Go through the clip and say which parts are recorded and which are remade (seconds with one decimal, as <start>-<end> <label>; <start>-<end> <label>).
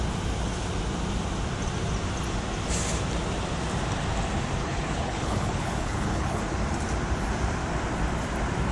0.0-4.6 recorded; 4.6-6.4 remade; 6.4-8.7 recorded